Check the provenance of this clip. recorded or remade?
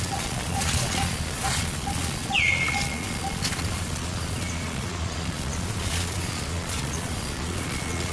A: remade